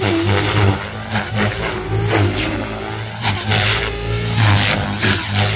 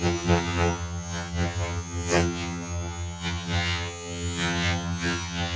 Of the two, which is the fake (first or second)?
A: second